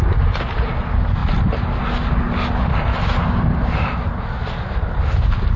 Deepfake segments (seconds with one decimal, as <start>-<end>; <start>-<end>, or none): none